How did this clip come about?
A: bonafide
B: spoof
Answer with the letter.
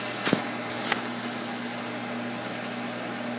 A